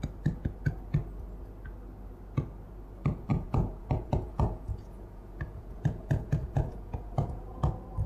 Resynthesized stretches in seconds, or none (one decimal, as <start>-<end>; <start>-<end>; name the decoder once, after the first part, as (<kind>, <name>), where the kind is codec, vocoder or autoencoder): 3.3-7.6 (vocoder, Vocos)